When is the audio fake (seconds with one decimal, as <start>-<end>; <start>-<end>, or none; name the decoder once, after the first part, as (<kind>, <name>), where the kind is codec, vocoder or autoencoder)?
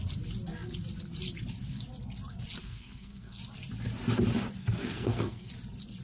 2.6-3.4 (codec, SNAC); 4.6-5.5